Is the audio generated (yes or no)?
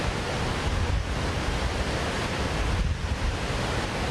no